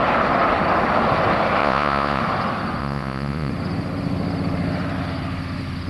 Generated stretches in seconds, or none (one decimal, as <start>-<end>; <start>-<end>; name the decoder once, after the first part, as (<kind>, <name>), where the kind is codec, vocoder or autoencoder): 1.6-2.2 (vocoder, Vocos); 2.8-3.5